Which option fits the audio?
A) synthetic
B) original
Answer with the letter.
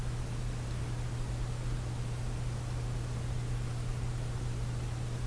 B